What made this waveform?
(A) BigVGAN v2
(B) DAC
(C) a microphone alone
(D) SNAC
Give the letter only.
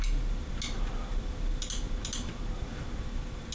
C